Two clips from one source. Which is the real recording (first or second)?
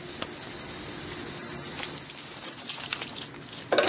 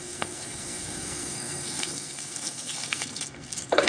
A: first